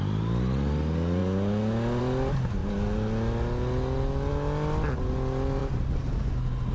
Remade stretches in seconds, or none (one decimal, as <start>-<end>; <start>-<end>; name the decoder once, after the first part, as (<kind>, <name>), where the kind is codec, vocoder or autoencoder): 5.6-6.1 (vocoder, BigVGAN v2)

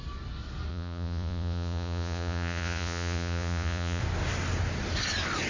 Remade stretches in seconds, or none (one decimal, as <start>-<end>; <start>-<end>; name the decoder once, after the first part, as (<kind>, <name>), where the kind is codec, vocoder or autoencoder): 0.7-4.0 (vocoder, Vocos)

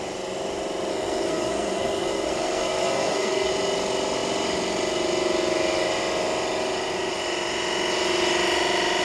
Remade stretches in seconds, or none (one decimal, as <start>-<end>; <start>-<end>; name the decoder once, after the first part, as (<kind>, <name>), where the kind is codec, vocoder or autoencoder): 0.9-3.5 (codec, SNAC)

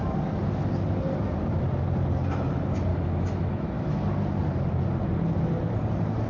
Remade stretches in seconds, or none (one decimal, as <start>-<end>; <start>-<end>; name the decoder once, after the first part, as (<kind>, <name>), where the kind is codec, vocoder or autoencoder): 2.9-4.0 (autoencoder, DAC-VAE)

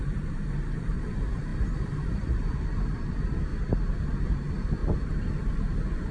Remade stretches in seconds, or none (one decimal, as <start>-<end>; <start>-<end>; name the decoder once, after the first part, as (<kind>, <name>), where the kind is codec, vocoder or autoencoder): 0.0-3.5 (vocoder, BigVGAN v2); 4.3-4.8; 5.3-6.1

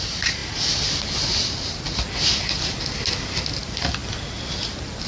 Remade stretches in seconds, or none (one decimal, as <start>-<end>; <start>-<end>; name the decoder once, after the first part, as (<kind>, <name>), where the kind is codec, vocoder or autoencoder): none

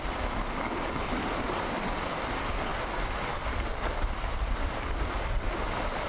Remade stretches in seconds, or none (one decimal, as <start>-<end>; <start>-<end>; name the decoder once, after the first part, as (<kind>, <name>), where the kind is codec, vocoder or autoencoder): none